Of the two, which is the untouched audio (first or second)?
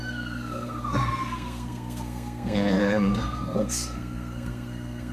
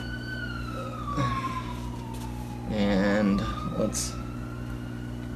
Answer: second